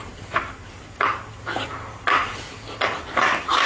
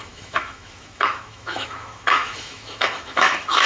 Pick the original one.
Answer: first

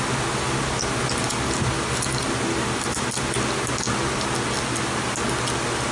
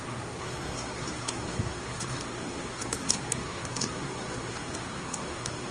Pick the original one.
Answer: first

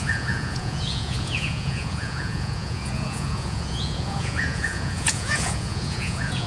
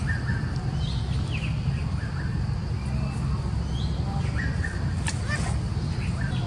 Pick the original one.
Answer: second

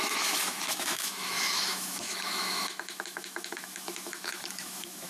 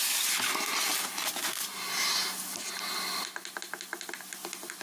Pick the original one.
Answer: second